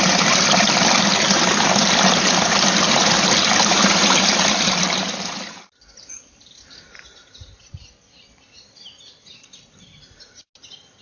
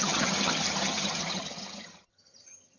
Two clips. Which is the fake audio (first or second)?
second